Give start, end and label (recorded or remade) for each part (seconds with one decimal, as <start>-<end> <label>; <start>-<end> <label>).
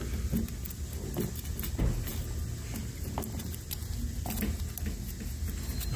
0.0-6.0 recorded